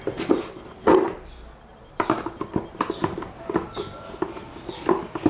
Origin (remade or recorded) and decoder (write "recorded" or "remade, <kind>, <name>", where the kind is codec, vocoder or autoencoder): recorded